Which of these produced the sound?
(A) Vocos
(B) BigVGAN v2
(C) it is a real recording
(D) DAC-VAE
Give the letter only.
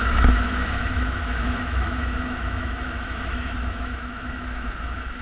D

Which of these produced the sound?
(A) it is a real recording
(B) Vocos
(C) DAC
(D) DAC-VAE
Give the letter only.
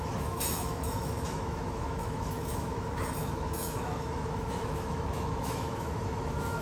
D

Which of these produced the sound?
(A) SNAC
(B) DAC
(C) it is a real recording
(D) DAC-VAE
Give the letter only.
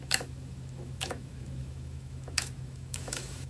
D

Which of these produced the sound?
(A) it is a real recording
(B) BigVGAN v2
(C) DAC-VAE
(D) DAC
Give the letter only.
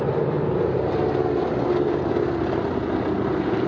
A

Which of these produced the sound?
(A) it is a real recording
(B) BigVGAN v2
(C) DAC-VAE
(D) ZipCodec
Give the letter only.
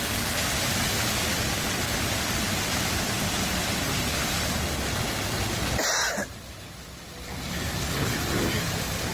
A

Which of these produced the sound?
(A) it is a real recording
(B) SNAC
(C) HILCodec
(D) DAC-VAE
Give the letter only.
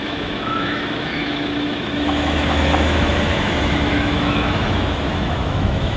D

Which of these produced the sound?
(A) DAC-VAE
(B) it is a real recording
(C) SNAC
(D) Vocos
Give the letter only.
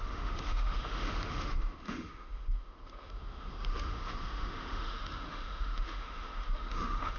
A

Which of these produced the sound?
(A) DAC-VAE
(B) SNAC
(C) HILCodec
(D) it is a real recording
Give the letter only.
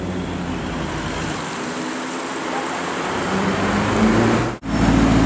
D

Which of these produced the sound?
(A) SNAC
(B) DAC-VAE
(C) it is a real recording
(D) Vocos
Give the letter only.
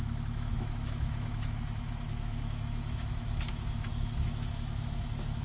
B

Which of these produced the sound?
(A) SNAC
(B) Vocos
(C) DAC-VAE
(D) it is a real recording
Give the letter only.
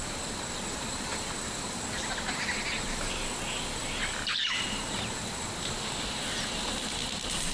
D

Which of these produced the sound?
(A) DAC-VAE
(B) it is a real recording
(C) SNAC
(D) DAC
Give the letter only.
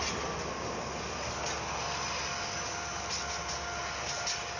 B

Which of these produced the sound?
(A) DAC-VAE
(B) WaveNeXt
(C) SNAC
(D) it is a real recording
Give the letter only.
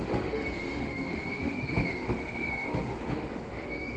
A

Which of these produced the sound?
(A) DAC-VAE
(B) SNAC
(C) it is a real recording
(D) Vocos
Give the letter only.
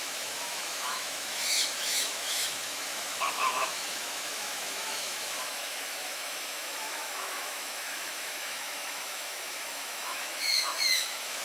A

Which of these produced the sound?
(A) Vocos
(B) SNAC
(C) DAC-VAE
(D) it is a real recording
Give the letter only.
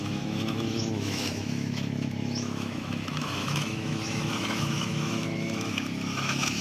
C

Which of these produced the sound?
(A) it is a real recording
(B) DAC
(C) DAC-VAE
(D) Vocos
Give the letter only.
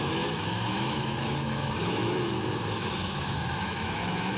C